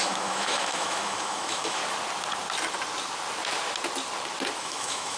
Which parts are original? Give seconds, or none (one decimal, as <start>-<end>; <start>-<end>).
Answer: 1.8-4.6